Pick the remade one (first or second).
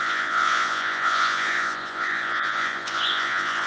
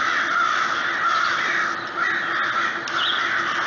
first